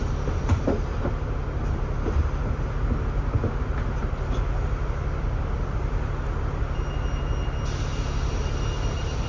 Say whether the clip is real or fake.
real